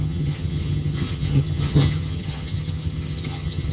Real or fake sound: fake